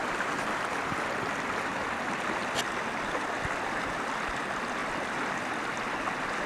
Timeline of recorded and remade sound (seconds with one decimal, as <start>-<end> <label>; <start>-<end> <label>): 0.0-6.5 recorded